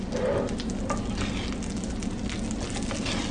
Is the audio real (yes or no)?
yes